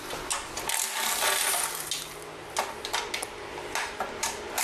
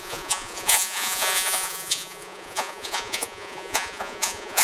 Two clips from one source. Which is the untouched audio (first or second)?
first